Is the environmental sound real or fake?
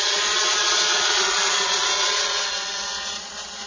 fake